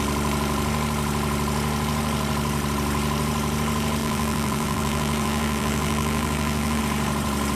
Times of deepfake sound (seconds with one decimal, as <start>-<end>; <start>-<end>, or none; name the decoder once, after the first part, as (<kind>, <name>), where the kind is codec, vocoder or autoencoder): 4.0-6.8 (vocoder, BigVGAN v2)

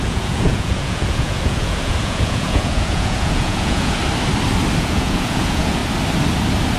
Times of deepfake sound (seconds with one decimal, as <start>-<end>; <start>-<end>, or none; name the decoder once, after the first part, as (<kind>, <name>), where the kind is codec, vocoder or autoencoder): 0.0-4.0 (vocoder, Vocos); 4.8-5.8